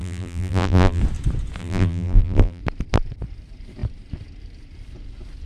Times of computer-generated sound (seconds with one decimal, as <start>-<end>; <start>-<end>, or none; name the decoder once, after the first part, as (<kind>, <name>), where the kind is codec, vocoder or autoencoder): 0.0-1.0 (vocoder, BigVGAN v2); 1.6-2.6